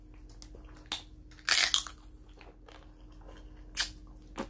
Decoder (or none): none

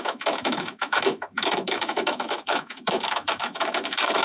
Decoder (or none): autoencoder, DAC-VAE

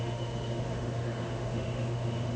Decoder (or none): autoencoder, DAC-VAE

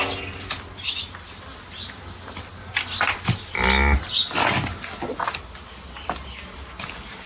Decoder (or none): none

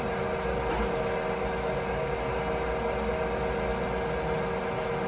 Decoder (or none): none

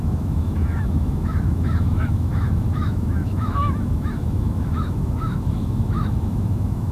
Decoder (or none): autoencoder, DAC-VAE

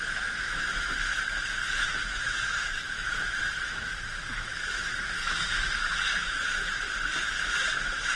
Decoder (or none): autoencoder, DAC-VAE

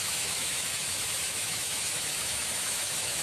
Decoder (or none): autoencoder, DAC-VAE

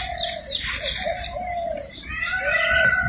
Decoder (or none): none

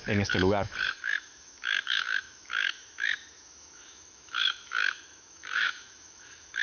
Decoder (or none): autoencoder, DAC-VAE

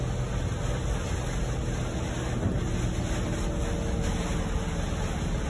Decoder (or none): none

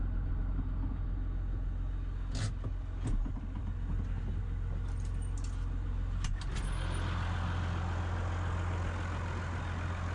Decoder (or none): none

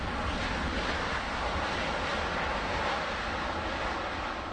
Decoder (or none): none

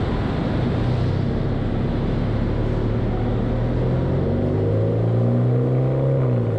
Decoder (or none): none